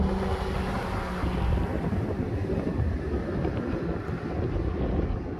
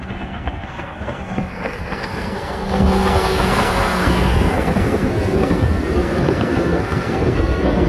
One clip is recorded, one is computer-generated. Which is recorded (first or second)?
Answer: first